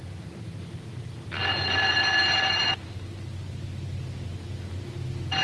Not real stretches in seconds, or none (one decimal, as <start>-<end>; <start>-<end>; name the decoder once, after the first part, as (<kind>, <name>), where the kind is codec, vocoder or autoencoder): none